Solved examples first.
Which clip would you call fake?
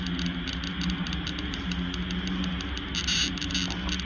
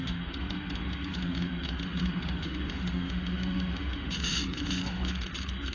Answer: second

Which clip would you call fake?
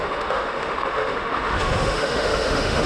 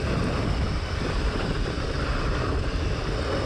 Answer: first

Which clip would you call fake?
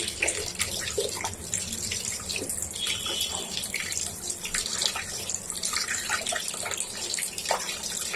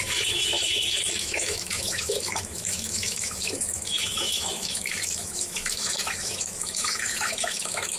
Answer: second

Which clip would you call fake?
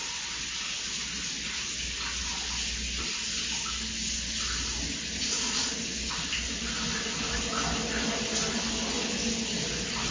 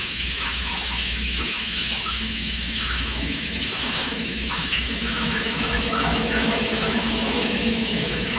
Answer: second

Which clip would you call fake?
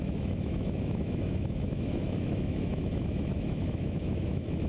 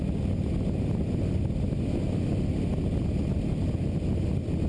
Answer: first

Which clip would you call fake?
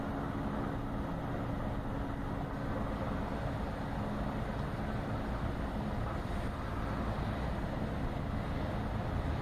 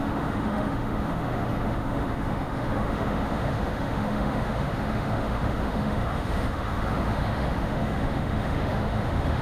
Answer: second